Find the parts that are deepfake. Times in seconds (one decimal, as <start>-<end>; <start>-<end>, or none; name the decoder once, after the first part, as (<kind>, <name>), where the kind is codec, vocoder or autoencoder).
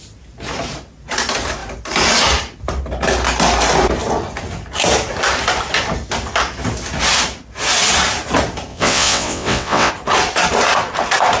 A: 8.7-9.9 (vocoder, WaveNeXt)